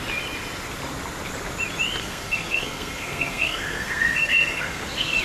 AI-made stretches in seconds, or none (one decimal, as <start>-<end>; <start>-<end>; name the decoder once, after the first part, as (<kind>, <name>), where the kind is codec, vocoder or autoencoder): 2.0-5.2 (codec, SNAC)